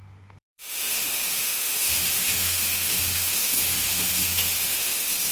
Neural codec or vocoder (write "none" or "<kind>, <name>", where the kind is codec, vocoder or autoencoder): autoencoder, DAC-VAE